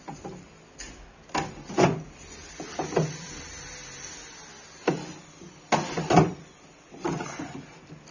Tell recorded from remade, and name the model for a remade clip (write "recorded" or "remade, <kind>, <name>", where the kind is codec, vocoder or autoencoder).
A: recorded